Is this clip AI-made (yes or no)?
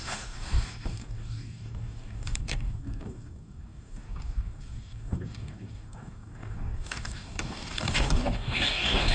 yes